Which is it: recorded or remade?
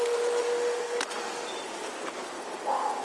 recorded